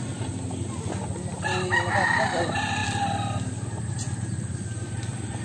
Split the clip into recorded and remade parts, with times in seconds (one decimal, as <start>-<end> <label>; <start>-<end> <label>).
0.0-5.4 recorded

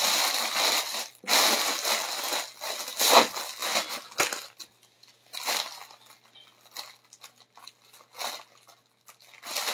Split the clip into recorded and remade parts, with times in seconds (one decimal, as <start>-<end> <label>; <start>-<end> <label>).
0.0-9.7 recorded

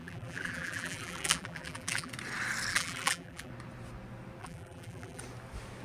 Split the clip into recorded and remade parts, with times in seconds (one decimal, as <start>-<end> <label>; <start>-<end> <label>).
0.0-2.1 remade; 2.1-2.7 recorded; 2.7-3.5 remade; 3.5-4.4 recorded; 4.4-5.2 remade; 5.2-5.8 recorded

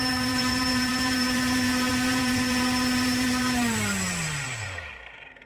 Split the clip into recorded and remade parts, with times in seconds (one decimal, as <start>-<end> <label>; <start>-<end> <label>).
0.0-5.5 remade

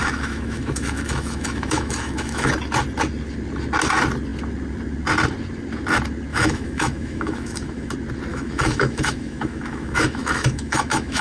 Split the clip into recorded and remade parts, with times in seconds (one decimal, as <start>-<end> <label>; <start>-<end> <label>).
0.0-2.5 remade; 2.5-6.3 recorded; 6.3-7.9 remade; 7.9-8.3 recorded; 8.3-11.2 remade

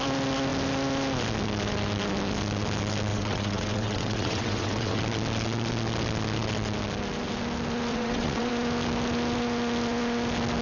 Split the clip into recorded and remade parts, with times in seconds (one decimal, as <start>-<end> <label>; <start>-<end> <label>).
0.0-3.1 recorded; 3.1-5.0 remade; 5.0-7.9 recorded; 7.9-8.5 remade; 8.5-10.6 recorded

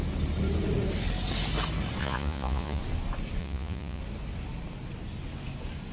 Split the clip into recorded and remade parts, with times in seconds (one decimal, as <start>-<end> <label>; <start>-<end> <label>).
0.0-2.0 recorded; 2.0-2.8 remade; 2.8-3.4 recorded; 3.4-4.0 remade; 4.0-5.9 recorded

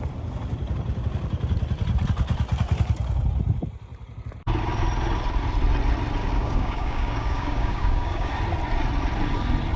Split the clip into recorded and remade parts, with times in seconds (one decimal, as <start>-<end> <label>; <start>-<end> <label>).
0.0-6.2 recorded; 6.2-8.3 remade; 8.3-9.8 recorded